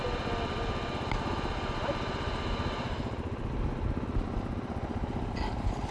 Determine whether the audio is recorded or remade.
recorded